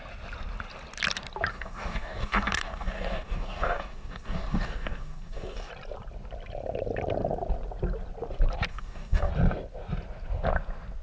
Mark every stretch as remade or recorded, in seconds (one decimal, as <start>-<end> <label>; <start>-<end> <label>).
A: 0.0-1.5 recorded; 1.5-5.7 remade; 5.7-8.7 recorded; 8.7-9.3 remade; 9.3-11.0 recorded